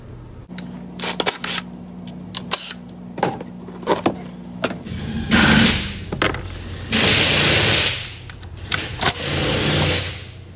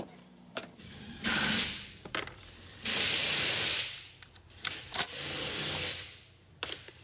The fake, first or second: second